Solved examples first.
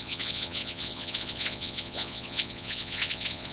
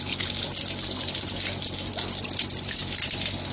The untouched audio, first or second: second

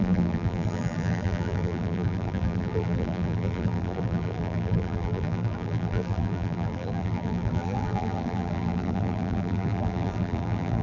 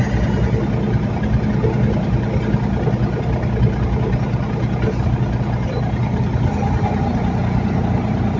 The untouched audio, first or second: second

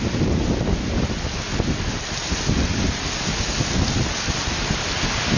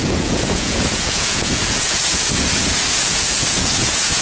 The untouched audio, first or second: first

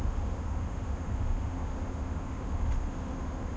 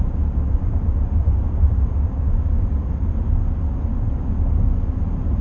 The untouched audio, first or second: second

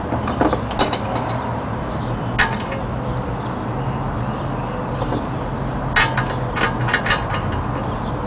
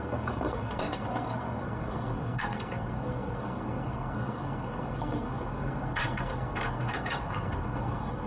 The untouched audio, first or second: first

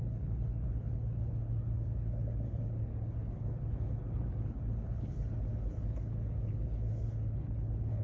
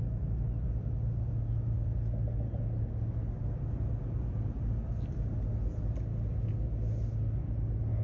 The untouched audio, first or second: second